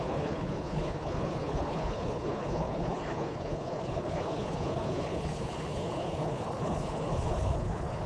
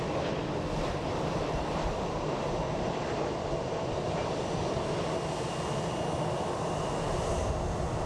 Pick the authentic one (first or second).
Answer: second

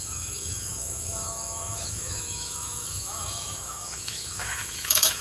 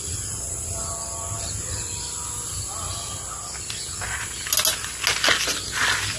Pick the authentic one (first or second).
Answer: second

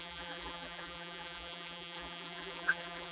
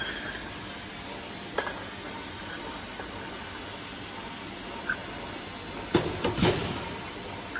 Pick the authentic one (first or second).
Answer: second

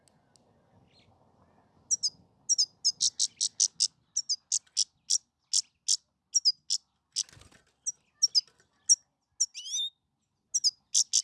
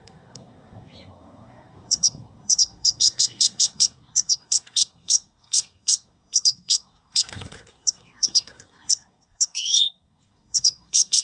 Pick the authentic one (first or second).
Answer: first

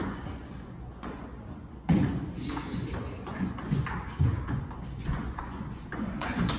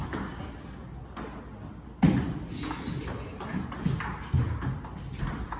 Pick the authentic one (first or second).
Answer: second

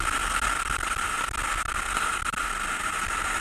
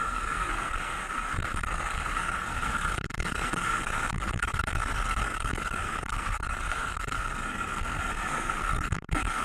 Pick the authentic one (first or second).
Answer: first